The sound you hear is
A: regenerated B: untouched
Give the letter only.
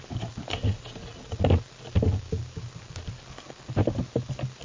B